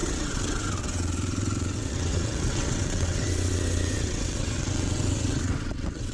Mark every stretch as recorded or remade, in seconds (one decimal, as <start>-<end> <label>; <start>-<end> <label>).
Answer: 0.0-6.1 remade